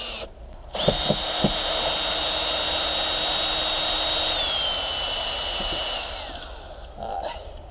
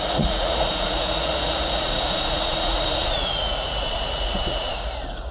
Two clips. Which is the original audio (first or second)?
first